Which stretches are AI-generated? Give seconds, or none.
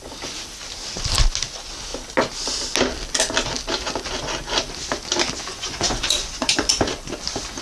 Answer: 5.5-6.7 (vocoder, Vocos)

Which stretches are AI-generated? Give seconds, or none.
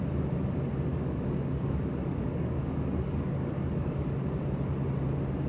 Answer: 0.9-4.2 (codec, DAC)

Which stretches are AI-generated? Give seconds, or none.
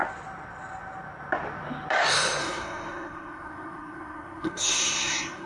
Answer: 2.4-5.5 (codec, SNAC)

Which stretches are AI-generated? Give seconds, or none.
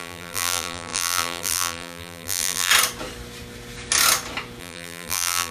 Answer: 0.0-2.7 (vocoder, BigVGAN v2); 4.6-5.5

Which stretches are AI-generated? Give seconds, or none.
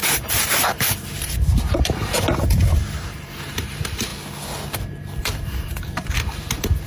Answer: 0.0-4.1 (vocoder, BigVGAN v2); 5.2-6.9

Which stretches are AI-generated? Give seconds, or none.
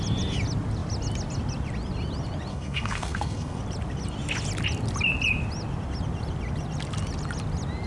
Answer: 2.5-3.6 (codec, SNAC)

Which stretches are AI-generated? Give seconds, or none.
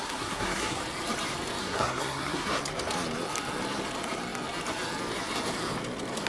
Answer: 0.0-0.8 (codec, SNAC); 1.6-2.6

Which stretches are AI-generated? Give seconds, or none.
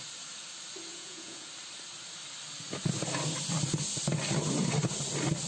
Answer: 0.9-1.5 (vocoder, Vocos)